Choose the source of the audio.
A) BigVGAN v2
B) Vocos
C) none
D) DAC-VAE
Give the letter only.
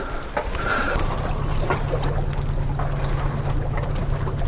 C